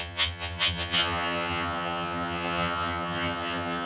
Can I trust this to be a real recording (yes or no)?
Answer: no